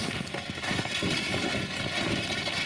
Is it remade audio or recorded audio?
recorded